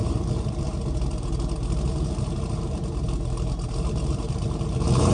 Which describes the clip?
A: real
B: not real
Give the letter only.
B